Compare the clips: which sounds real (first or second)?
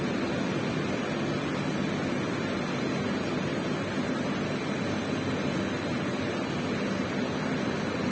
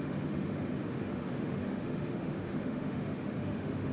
first